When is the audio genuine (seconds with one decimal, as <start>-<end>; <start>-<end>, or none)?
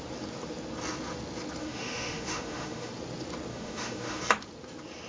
0.0-1.6; 2.9-3.5; 4.2-5.1